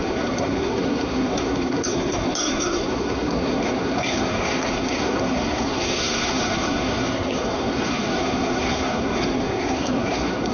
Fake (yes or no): yes